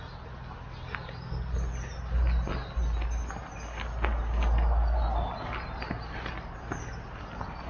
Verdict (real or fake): real